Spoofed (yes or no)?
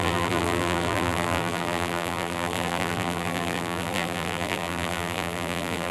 yes